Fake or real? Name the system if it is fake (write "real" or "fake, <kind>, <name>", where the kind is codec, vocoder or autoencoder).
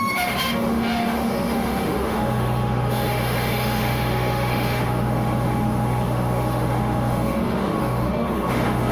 fake, autoencoder, DAC-VAE